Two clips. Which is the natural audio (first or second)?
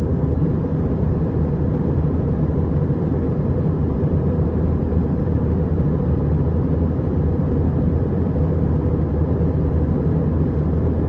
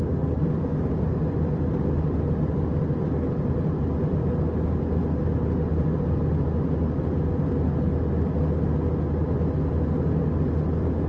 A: second